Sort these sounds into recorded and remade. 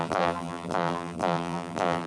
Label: remade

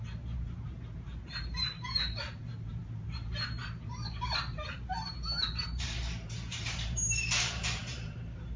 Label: remade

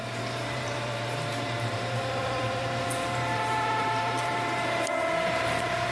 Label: remade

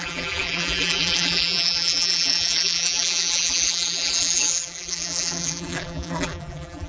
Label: remade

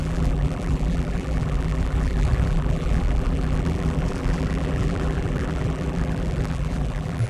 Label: remade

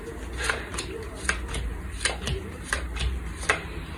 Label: remade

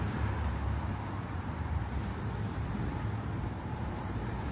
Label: remade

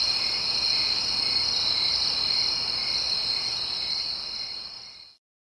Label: recorded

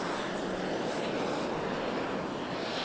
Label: recorded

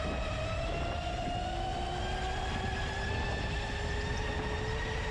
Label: recorded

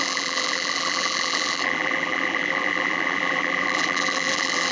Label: remade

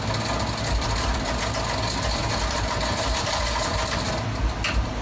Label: recorded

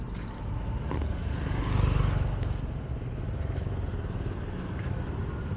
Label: recorded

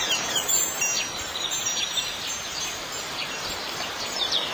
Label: remade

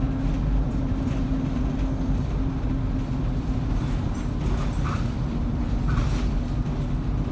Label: recorded